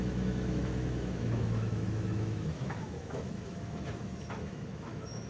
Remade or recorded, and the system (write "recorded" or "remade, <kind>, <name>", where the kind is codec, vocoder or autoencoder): remade, autoencoder, DAC-VAE